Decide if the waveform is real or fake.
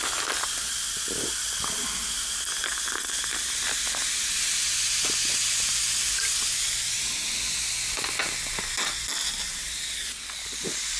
real